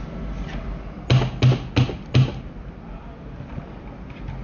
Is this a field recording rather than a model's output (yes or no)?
yes